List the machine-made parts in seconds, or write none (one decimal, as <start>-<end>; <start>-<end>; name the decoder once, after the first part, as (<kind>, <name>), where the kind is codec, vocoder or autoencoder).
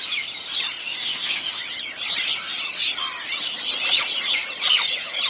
0.8-1.6 (autoencoder, DAC-VAE)